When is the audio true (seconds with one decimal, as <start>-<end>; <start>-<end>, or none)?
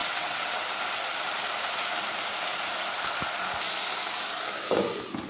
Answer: 0.7-5.3